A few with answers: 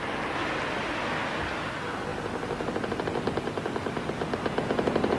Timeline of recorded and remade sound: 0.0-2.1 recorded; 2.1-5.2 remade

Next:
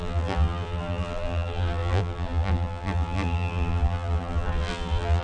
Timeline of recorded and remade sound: 0.0-5.2 remade

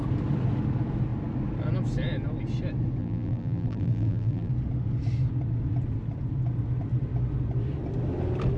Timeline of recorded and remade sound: 0.0-3.0 recorded; 3.0-4.5 remade; 4.5-8.6 recorded